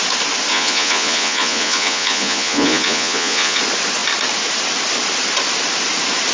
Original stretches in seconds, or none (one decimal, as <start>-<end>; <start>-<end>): 0.0-0.5; 3.6-6.3